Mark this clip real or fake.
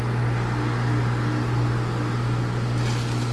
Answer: real